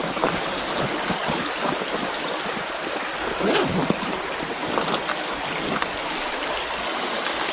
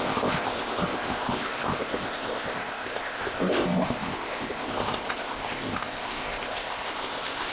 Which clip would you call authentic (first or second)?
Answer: first